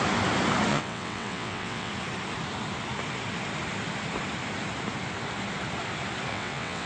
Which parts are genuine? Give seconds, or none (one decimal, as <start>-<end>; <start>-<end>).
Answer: 0.0-0.7; 1.9-6.3

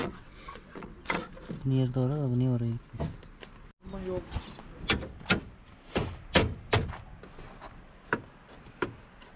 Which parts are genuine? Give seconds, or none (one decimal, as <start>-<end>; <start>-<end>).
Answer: 1.3-9.4

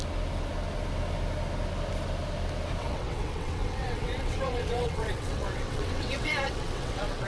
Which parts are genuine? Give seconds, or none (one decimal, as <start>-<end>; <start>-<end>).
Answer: 0.0-2.8

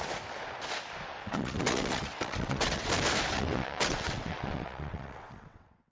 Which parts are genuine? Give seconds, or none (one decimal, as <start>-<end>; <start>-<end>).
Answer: 0.0-1.2; 2.9-3.3

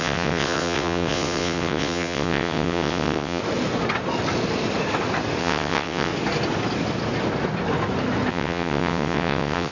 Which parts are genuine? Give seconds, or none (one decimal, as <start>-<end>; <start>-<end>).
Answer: 3.4-5.4; 6.1-8.3

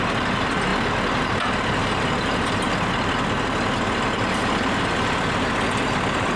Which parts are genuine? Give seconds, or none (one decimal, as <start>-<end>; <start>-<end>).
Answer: 0.0-6.4